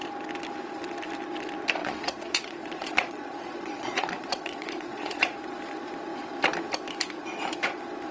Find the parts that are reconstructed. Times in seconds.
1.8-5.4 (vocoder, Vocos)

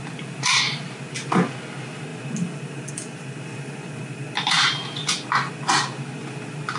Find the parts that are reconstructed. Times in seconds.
3.5-4.0 (vocoder, Vocos)

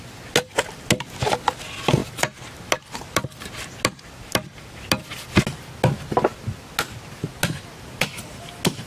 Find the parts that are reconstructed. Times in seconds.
none

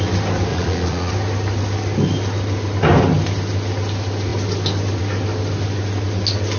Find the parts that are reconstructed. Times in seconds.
0.5-1.1 (vocoder, Vocos)